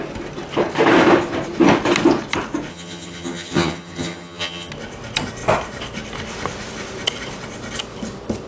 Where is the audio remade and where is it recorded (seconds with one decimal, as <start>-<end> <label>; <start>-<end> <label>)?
0.0-2.7 recorded; 2.7-4.7 remade; 4.7-8.5 recorded